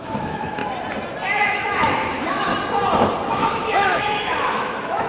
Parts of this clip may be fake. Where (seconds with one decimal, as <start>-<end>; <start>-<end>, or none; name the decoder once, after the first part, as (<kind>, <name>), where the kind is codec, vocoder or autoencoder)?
0.0-0.6 (autoencoder, DAC-VAE); 1.4-2.5; 3.3-5.1